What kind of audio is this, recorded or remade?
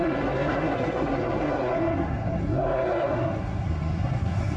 remade